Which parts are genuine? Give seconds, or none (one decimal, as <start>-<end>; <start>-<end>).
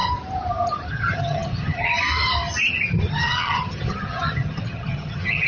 0.0-0.9; 1.9-3.1